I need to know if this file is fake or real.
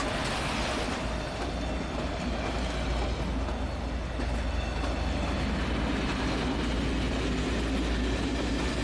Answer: real